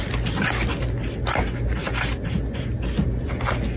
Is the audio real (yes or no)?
yes